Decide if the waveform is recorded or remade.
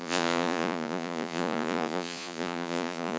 remade